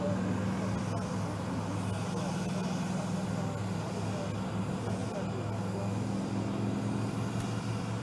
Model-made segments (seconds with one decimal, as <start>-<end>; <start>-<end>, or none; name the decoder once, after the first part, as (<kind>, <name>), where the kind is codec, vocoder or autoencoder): none